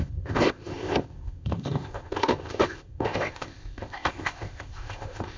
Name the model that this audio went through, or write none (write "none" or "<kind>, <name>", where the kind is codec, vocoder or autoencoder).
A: codec, ZipCodec